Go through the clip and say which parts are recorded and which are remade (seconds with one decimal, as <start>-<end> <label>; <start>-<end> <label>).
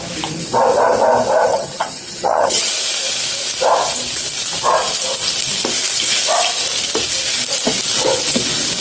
0.0-1.5 recorded; 1.5-2.7 remade; 2.7-8.8 recorded